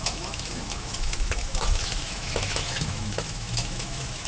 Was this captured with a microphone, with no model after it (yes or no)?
no